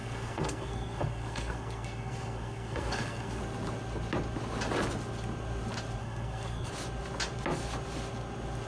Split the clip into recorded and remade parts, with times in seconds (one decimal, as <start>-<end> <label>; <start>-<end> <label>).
0.0-3.4 remade; 3.4-6.0 recorded; 6.0-6.7 remade; 6.7-8.7 recorded